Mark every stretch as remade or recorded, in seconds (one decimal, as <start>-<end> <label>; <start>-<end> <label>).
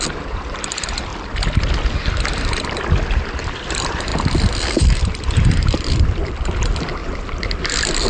0.0-1.1 remade; 1.1-1.7 recorded; 1.7-8.1 remade